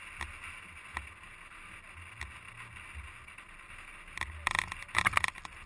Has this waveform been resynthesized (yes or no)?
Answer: no